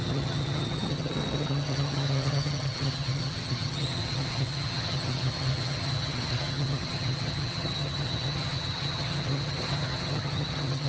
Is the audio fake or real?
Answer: fake